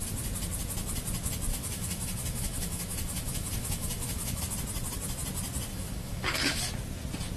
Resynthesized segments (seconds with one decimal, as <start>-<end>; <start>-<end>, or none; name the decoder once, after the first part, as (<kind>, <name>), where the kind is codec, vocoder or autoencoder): 1.5-4.4 (autoencoder, DAC-VAE); 5.7-6.7